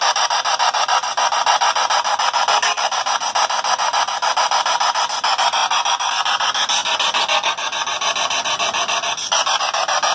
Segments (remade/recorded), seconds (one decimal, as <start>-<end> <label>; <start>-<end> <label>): 0.0-10.1 recorded